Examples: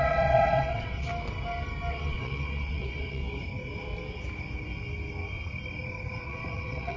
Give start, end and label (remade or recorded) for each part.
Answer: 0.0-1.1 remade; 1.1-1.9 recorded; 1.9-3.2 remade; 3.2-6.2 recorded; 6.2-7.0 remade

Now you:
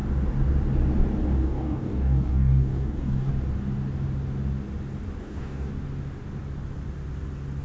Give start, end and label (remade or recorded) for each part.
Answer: 0.0-1.4 recorded; 1.4-3.3 remade; 3.3-5.2 recorded; 5.2-5.7 remade; 5.7-7.6 recorded

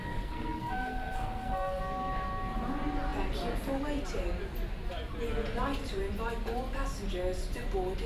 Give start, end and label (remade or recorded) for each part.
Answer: 0.0-1.8 remade; 1.8-8.1 recorded